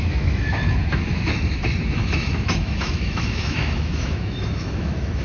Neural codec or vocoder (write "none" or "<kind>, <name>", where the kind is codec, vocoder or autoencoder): autoencoder, DAC-VAE